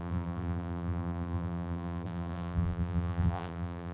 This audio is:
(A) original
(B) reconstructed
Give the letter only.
B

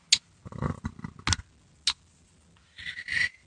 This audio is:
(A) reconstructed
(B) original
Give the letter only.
B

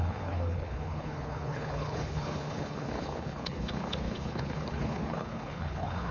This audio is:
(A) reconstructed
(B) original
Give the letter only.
A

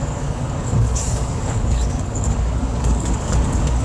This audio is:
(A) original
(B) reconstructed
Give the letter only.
B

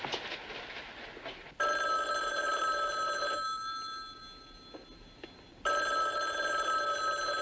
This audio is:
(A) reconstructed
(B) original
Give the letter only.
B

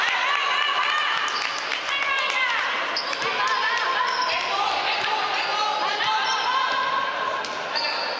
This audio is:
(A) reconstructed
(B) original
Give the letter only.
B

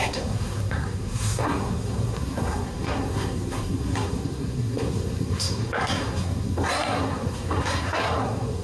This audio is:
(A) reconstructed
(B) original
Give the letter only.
A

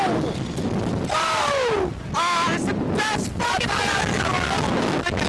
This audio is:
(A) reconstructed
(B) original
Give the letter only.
B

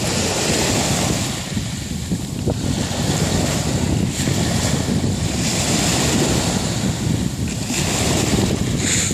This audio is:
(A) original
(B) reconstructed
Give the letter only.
A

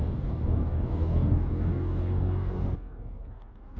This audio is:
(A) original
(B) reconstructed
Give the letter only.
B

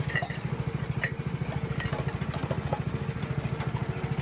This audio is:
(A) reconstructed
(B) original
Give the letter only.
B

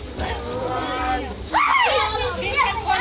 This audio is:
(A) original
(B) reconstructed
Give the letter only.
A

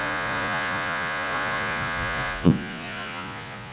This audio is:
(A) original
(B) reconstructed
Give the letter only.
B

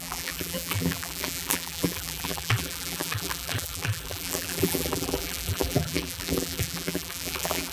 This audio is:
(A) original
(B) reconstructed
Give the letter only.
B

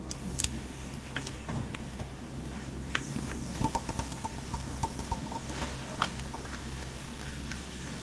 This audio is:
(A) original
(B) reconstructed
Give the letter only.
B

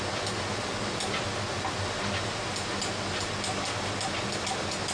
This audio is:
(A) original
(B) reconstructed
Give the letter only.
A